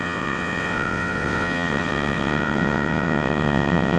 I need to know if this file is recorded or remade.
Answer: remade